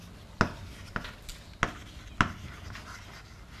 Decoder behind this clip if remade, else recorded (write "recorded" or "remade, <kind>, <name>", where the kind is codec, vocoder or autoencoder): recorded